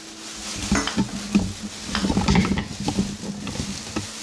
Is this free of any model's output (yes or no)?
yes